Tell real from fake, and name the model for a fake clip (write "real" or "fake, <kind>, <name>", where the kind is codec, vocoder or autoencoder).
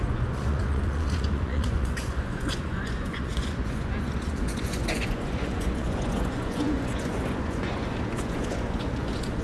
fake, vocoder, Vocos